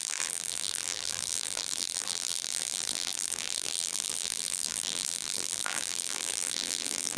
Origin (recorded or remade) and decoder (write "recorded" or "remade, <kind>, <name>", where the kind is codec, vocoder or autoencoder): remade, vocoder, BigVGAN v2